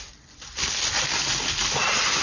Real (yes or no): no